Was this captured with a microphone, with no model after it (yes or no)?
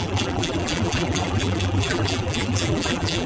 no